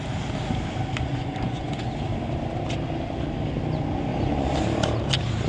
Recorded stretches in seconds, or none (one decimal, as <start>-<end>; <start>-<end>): 0.0-1.1; 1.9-4.1; 4.6-5.5